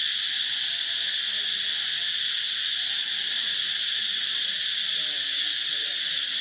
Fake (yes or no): no